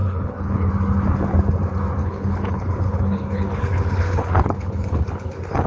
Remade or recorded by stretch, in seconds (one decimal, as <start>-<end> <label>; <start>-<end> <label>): 0.0-0.7 remade; 0.7-2.0 recorded; 2.0-5.7 remade